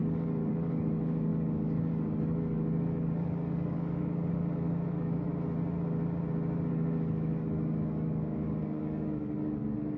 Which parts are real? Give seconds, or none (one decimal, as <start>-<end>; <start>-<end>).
5.3-6.7